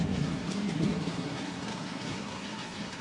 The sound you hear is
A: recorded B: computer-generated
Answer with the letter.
B